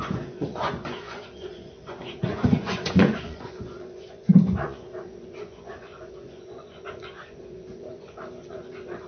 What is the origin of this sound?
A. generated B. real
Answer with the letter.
A